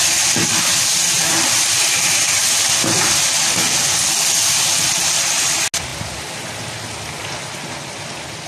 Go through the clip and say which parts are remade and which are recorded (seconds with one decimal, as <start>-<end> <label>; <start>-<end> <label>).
0.0-1.0 recorded; 1.0-1.9 remade; 1.9-8.5 recorded